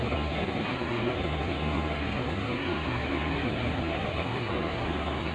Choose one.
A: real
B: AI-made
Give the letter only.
B